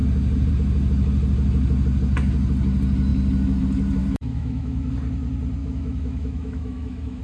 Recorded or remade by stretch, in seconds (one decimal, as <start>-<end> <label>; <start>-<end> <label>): 0.0-4.0 recorded; 4.0-4.9 remade; 4.9-5.6 recorded; 5.6-7.2 remade